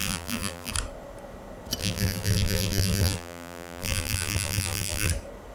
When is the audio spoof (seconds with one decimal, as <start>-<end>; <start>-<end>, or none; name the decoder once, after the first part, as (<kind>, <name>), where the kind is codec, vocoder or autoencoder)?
0.0-0.7 (vocoder, BigVGAN v2); 1.8-5.1